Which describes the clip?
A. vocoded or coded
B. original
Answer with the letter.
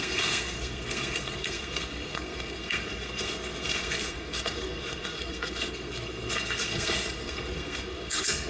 A